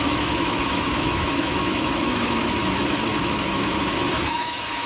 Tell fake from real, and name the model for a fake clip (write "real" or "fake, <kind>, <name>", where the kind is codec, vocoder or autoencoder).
fake, autoencoder, DAC-VAE